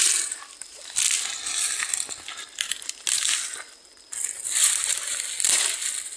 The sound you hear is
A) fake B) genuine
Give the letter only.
B